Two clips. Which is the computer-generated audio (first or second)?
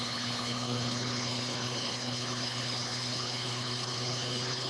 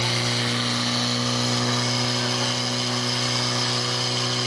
first